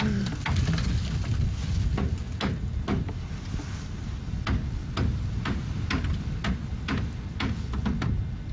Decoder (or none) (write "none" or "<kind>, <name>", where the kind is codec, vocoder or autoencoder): none